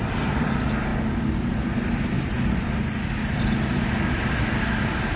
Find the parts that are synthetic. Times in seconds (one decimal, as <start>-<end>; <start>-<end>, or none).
none